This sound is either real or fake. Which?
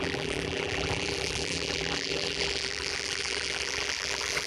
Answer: fake